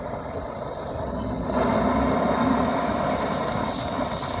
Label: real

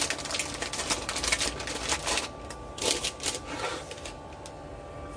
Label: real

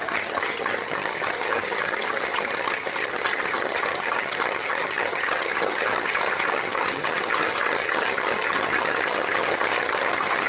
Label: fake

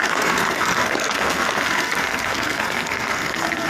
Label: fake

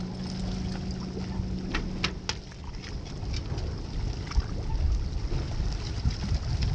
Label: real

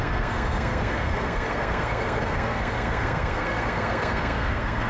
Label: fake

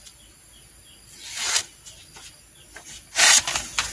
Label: real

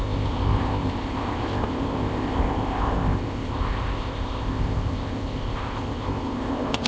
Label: fake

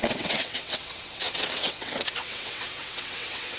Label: fake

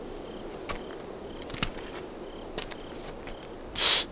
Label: real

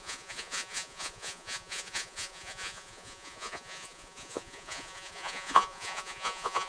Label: fake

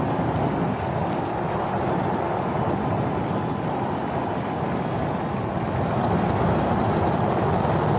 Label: real